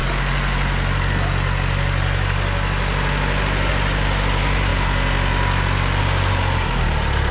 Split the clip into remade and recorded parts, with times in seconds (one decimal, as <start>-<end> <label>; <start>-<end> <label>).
0.0-3.7 recorded; 3.7-4.7 remade; 4.7-6.0 recorded; 6.0-7.3 remade